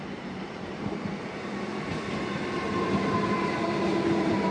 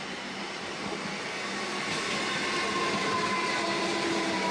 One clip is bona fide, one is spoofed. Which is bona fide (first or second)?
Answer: second